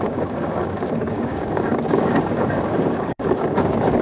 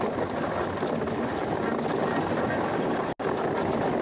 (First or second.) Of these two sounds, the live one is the second